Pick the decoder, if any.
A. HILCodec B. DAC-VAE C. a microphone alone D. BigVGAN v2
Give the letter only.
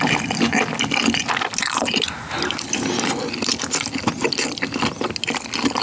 C